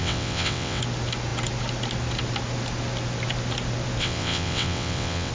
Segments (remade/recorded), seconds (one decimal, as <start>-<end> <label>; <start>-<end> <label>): 0.0-0.8 remade; 0.8-4.0 recorded; 4.0-5.3 remade